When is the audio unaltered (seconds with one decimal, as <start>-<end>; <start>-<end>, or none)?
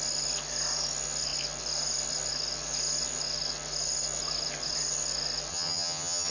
0.0-5.5